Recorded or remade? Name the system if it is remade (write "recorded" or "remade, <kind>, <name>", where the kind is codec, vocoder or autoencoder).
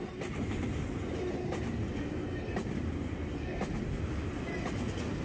recorded